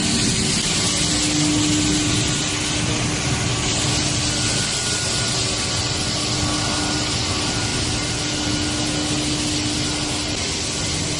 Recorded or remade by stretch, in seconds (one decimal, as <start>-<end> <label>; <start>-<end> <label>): 0.0-11.2 recorded